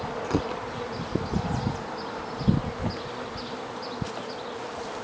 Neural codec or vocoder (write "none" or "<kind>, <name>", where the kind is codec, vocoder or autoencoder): none